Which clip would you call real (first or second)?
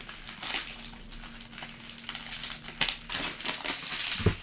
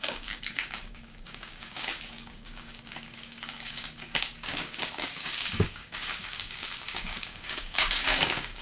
first